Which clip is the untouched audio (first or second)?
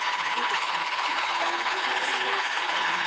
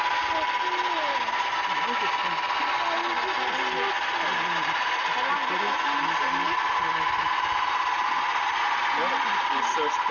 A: second